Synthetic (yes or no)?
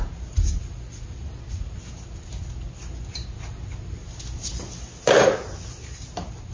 no